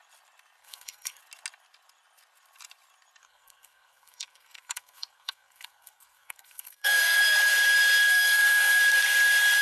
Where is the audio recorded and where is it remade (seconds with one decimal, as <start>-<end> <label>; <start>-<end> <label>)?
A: 0.0-0.6 recorded; 0.6-1.2 remade; 1.2-3.2 recorded; 3.2-7.2 remade; 7.2-8.1 recorded; 8.1-8.8 remade; 8.8-9.6 recorded